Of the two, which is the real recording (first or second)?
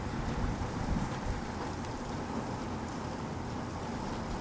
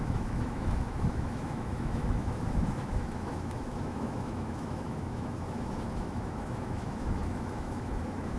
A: first